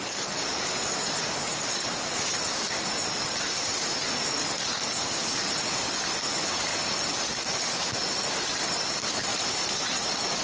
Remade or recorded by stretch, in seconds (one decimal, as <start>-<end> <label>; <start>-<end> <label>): 0.0-0.5 recorded; 0.5-1.9 remade; 1.9-9.3 recorded; 9.3-10.0 remade; 10.0-10.4 recorded

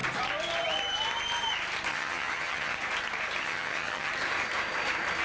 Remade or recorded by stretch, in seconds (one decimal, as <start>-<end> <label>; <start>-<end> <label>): 0.0-1.9 recorded; 1.9-2.7 remade; 2.7-3.4 recorded; 3.4-4.1 remade; 4.1-5.2 recorded

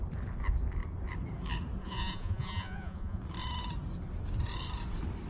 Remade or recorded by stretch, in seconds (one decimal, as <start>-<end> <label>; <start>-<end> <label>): 0.0-1.8 recorded; 1.8-3.2 remade; 3.2-5.3 recorded

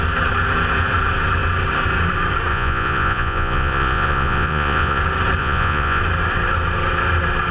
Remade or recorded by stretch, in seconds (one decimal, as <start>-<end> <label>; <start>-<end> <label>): 0.0-2.5 recorded; 2.5-5.0 remade; 5.0-5.4 recorded; 5.4-6.0 remade; 6.0-7.5 recorded

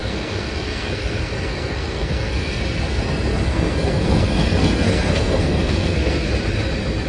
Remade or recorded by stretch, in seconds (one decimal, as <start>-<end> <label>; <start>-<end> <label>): 0.0-2.6 remade; 2.6-3.3 recorded; 3.3-6.3 remade; 6.3-7.1 recorded

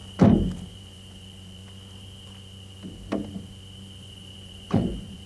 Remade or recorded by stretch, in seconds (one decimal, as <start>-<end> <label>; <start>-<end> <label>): 0.0-0.7 recorded; 0.7-1.6 remade; 1.6-4.0 recorded; 4.0-5.3 remade

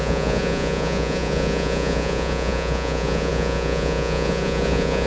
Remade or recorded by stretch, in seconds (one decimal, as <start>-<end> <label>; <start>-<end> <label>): 0.0-5.1 remade